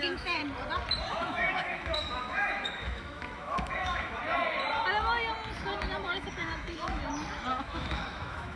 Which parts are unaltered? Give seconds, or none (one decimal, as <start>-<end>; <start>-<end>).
0.4-1.1; 4.2-6.0; 7.0-7.5